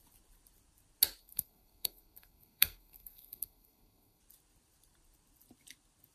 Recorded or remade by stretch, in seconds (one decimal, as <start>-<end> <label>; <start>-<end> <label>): 0.0-1.2 recorded; 1.2-4.2 remade; 4.2-6.1 recorded